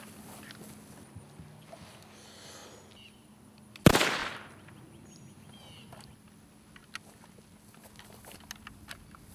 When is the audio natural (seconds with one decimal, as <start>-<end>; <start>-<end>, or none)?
0.0-2.6; 3.2-4.2; 5.3-9.3

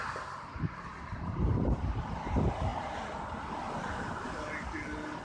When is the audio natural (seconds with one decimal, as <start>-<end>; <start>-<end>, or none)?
0.0-0.9; 2.1-5.2

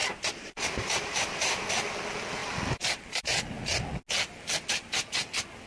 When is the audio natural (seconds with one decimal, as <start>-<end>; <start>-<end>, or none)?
1.7-5.7

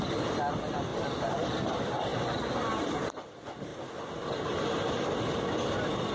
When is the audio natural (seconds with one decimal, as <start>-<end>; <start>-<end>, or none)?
0.9-1.5; 3.7-4.9

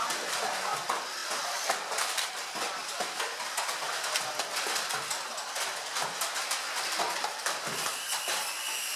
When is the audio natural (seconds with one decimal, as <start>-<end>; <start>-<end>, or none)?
0.0-9.0

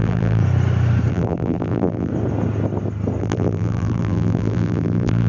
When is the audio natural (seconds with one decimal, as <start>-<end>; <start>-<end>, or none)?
0.4-1.1; 2.1-3.2